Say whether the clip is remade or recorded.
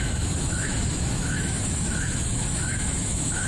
remade